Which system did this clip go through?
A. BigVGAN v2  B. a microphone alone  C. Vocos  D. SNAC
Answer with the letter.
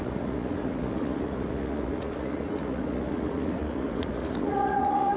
C